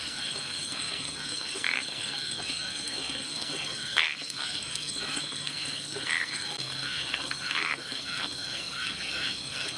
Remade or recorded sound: remade